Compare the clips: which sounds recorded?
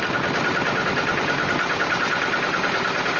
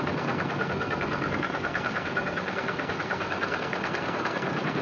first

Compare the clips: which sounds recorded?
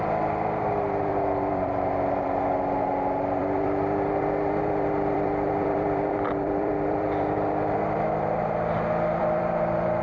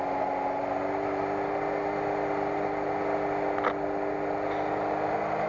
second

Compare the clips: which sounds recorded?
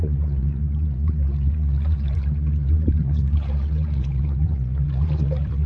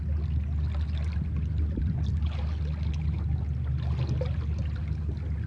second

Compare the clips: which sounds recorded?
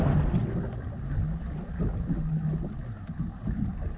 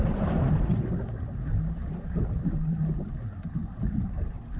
first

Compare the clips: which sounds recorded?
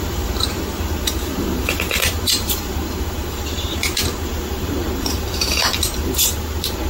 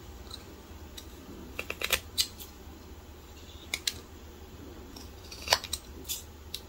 second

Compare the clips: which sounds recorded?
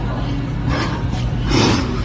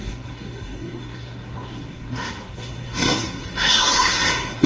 first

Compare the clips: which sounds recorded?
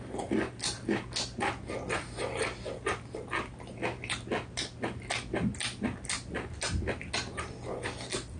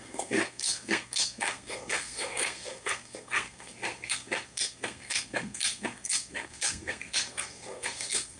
first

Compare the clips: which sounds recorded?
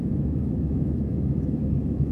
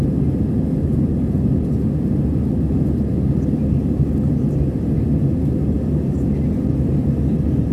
second